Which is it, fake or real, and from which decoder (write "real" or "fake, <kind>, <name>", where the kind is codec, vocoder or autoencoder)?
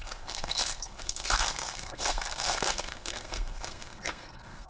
fake, codec, SNAC